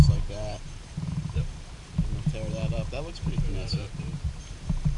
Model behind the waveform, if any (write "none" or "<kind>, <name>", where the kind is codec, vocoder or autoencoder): vocoder, BigVGAN v2